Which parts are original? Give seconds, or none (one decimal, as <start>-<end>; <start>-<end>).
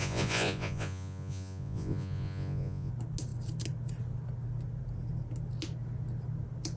2.9-6.8